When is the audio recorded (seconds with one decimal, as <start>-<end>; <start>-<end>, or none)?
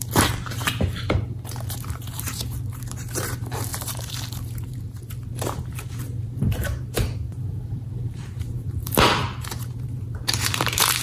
none